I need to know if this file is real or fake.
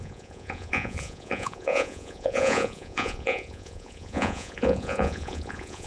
fake